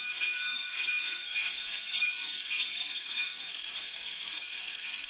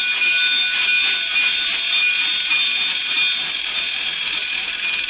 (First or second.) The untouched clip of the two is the second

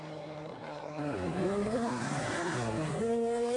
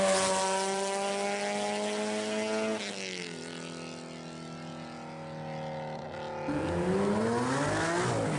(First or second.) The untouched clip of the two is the second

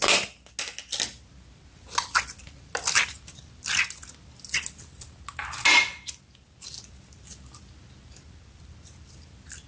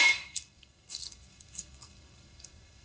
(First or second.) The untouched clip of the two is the first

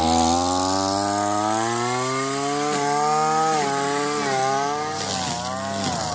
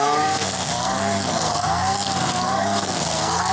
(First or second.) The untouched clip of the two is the first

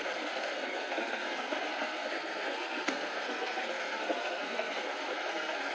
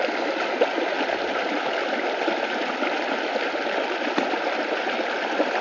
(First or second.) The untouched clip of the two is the second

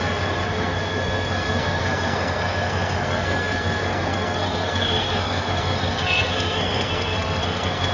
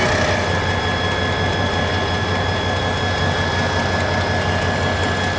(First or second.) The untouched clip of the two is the second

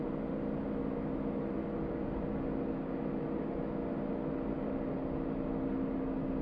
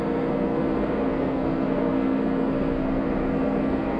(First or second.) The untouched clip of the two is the first